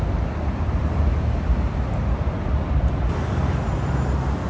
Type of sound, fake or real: real